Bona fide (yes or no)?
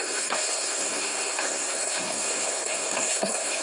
no